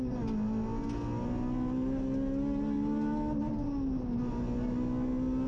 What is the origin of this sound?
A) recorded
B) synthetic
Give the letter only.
A